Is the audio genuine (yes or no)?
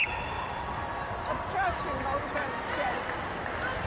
yes